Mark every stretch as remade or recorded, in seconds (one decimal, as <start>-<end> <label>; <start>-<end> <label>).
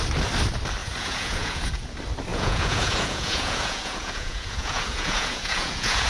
0.0-0.8 recorded; 0.8-1.8 remade; 1.8-2.3 recorded; 2.3-6.1 remade